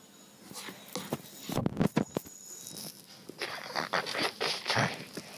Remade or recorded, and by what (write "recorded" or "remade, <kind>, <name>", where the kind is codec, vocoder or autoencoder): recorded